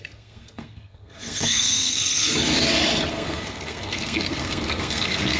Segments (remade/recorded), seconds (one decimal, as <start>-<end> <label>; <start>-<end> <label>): 0.0-2.3 remade; 2.3-3.1 recorded; 3.1-5.4 remade